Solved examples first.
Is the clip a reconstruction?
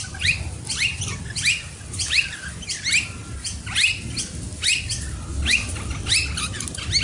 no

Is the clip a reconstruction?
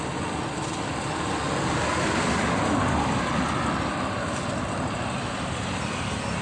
no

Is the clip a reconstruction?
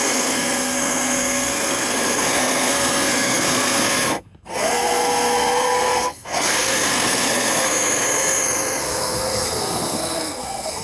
yes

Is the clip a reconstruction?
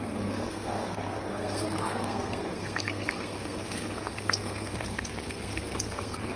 yes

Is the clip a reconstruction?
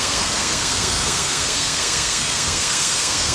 yes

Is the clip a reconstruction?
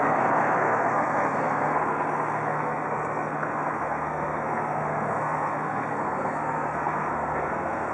yes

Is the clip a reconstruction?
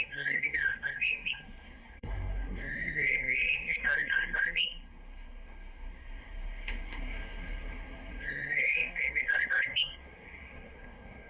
yes